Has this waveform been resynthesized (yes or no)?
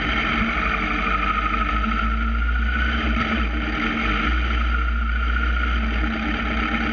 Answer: no